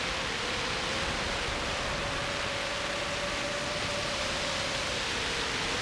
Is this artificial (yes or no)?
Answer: no